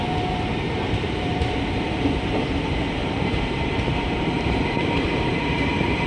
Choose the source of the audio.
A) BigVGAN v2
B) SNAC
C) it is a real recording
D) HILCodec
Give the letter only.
A